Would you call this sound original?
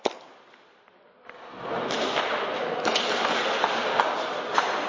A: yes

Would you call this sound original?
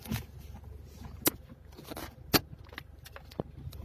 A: yes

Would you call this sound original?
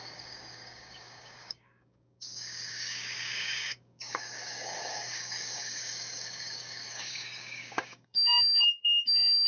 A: no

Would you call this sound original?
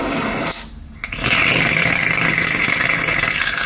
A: yes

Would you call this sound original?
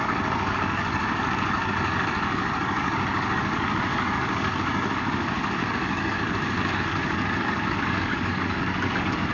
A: no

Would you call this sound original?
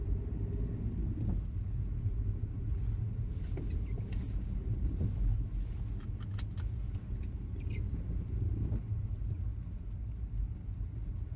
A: yes